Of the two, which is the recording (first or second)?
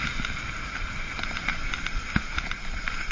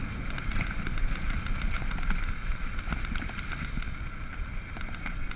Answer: second